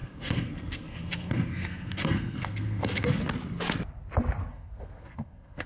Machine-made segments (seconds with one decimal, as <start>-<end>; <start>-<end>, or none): 0.0-3.2; 4.5-5.7